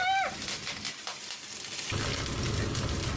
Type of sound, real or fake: real